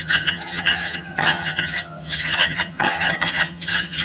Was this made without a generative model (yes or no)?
no